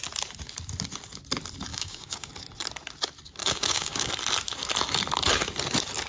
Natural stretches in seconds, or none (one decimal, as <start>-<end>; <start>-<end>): 0.0-1.7; 2.3-3.4; 4.1-6.1